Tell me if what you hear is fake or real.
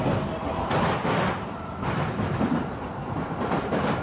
fake